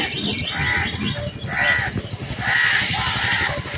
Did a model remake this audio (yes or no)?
no